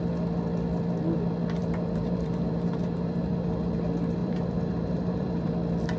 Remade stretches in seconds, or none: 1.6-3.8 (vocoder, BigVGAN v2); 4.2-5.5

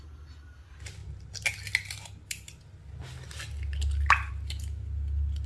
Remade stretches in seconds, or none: none